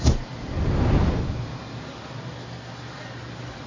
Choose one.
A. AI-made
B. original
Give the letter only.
B